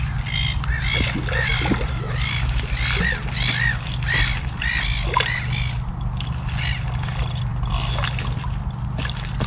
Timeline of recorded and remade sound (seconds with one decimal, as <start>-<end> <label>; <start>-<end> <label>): 0.0-9.5 recorded